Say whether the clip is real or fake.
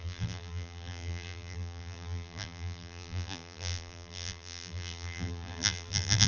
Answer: fake